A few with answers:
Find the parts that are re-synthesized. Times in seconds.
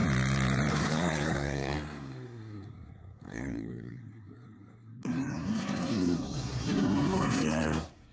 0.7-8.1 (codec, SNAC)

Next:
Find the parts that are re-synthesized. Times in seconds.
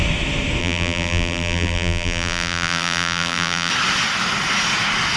0.6-3.7 (vocoder, BigVGAN v2)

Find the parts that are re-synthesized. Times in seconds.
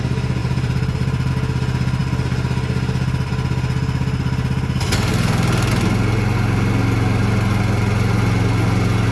0.4-1.3 (vocoder, BigVGAN v2); 5.1-5.7